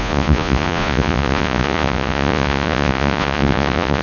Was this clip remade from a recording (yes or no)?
yes